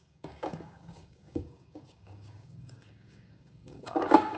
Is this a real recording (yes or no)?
no